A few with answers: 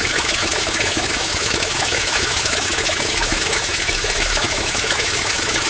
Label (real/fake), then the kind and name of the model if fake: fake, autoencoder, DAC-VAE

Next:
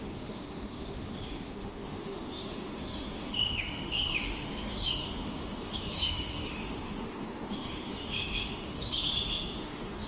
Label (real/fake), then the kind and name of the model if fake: fake, autoencoder, DAC-VAE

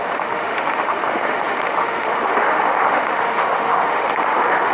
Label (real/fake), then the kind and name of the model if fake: fake, autoencoder, DAC-VAE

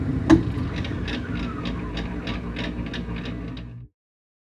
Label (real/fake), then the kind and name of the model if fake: real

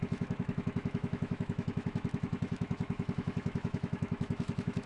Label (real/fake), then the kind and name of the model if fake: fake, autoencoder, DAC-VAE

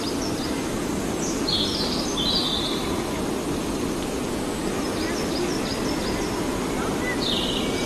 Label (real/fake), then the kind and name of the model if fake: real